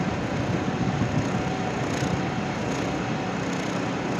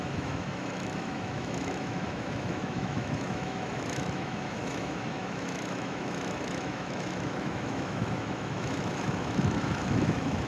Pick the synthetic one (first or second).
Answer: second